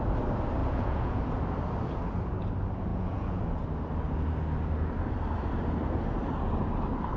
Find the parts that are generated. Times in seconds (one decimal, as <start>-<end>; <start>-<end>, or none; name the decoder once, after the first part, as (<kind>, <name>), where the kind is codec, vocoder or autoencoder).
0.6-1.2 (vocoder, Vocos); 2.9-3.6